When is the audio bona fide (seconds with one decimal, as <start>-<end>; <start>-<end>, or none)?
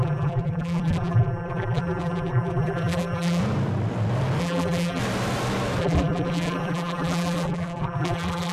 3.4-4.4; 5.0-5.8